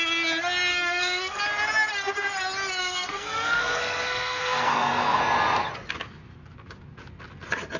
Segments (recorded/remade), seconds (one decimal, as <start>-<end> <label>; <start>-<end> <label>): 0.0-0.7 recorded; 0.7-1.4 remade; 1.4-2.8 recorded; 2.8-5.2 remade; 5.2-7.8 recorded